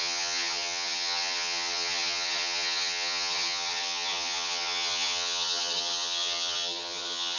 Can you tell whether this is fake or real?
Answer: fake